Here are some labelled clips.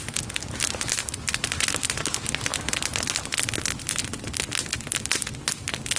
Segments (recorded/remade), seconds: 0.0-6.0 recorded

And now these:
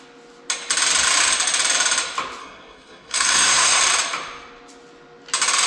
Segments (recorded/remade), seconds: 0.0-2.4 recorded; 2.4-3.8 remade; 3.8-5.7 recorded